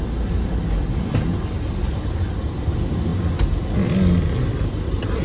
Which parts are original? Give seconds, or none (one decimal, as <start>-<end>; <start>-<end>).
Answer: 0.0-5.2